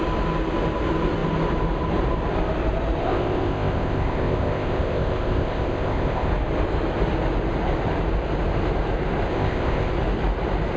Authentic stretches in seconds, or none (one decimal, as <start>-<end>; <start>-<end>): 0.0-3.0; 6.3-9.3; 9.9-10.8